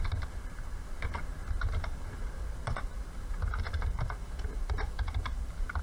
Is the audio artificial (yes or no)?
yes